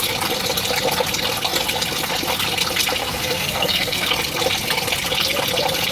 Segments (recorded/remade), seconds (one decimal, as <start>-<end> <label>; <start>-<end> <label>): 0.0-3.0 recorded; 3.0-4.1 remade; 4.1-5.9 recorded